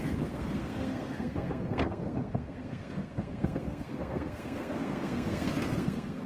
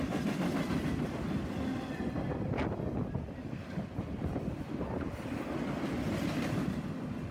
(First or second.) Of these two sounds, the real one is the second